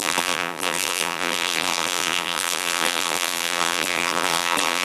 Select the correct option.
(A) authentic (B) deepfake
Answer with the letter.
B